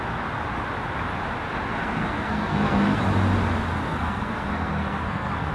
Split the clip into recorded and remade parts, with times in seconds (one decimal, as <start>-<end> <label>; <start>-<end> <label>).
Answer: 0.0-1.7 recorded; 1.7-3.0 remade; 3.0-3.9 recorded; 3.9-5.5 remade